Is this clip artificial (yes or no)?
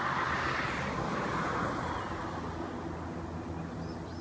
no